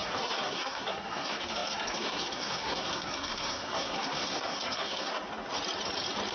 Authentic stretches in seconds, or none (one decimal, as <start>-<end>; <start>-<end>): 5.1-6.3